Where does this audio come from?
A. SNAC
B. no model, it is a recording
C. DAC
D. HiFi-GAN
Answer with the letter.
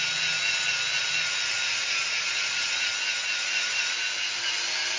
B